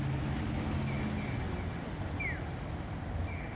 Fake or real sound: real